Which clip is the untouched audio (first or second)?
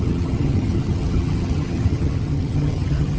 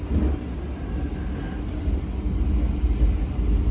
second